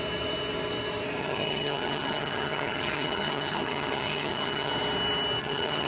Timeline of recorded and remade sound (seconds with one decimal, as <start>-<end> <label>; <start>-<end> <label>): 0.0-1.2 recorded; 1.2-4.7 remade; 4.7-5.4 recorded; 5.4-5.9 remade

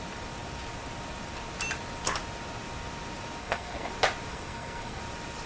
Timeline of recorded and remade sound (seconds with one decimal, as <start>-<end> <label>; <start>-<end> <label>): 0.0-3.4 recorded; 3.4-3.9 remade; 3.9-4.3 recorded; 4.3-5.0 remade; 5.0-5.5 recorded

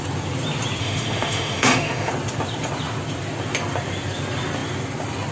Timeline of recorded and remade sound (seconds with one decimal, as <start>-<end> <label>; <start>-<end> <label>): 0.0-0.8 recorded; 0.8-2.1 remade; 2.1-5.3 recorded